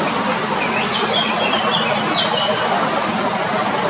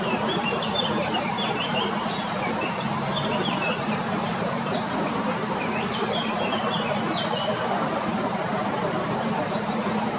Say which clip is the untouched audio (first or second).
first